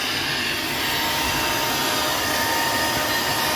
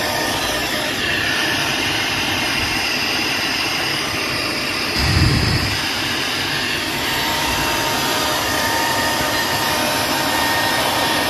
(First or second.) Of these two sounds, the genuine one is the first